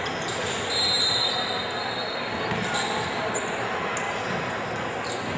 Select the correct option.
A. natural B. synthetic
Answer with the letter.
A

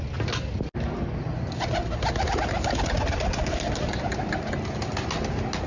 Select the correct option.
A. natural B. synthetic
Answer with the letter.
A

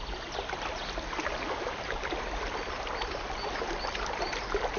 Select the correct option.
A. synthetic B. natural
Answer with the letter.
B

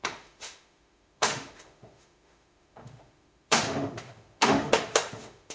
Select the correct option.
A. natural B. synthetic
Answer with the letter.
B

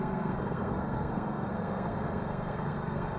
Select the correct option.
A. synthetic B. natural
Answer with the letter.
A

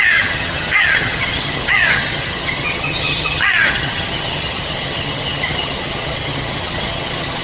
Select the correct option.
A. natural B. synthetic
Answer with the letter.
B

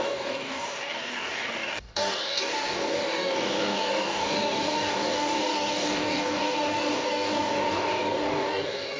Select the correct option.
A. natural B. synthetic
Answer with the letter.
B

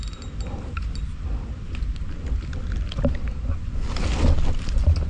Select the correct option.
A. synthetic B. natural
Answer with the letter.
B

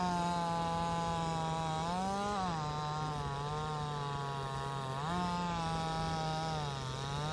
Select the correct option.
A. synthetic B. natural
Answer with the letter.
B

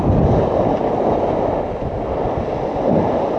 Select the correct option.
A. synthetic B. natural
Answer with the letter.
B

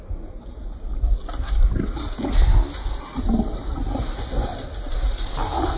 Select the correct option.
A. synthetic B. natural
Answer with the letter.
B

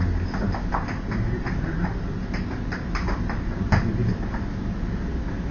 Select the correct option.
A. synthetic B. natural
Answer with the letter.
B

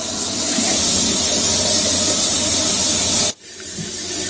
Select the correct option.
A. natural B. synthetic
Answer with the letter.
A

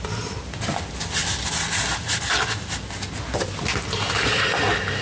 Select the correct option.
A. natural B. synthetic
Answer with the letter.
A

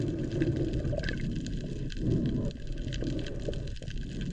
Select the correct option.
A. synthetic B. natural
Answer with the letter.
B